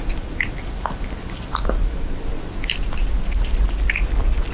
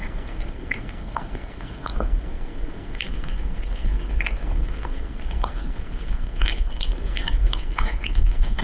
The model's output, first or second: second